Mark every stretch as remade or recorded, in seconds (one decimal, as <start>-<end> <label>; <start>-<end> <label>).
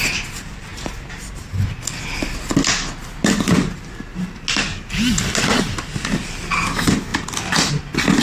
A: 0.0-7.1 recorded; 7.1-7.7 remade; 7.7-8.2 recorded